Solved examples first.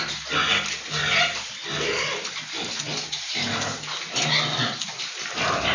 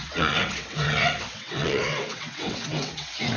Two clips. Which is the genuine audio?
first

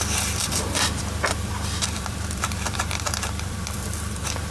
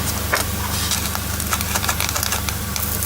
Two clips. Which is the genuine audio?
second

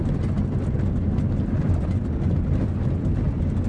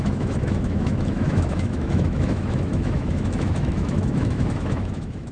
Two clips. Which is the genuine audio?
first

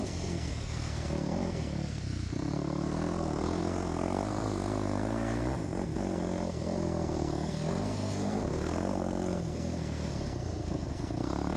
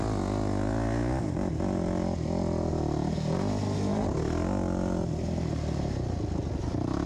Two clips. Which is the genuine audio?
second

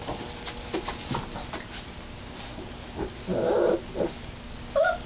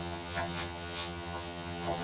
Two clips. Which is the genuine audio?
first